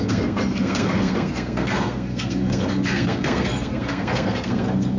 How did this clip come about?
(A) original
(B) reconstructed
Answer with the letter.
B